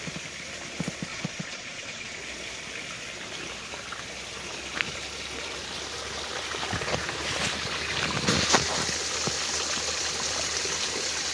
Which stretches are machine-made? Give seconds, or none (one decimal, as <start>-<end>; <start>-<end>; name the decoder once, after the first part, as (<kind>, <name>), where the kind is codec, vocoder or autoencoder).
1.1-2.2 (vocoder, Vocos)